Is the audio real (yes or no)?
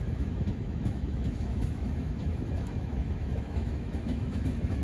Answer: no